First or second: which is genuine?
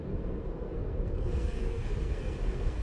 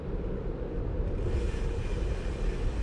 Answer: second